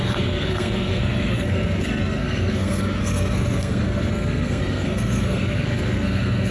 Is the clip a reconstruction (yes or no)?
yes